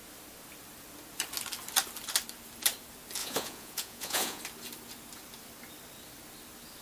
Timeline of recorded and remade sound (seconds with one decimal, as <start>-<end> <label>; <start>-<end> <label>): 0.0-3.2 recorded; 3.2-4.4 remade; 4.4-6.8 recorded